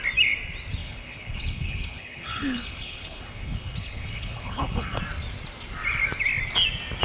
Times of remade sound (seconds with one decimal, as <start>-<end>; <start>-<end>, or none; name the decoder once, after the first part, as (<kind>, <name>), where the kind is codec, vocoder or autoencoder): 0.8-5.0 (codec, HILCodec)

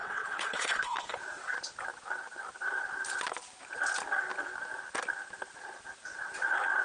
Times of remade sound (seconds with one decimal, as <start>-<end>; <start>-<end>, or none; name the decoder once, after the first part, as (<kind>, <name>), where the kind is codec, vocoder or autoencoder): 0.0-1.2 (codec, HILCodec)